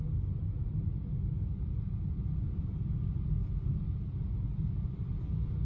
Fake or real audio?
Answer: real